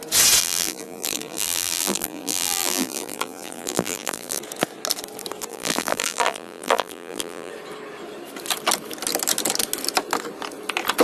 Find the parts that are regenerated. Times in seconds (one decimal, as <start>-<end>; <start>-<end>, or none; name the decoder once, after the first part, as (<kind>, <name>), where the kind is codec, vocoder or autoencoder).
0.4-4.4 (vocoder, BigVGAN v2); 5.5-7.5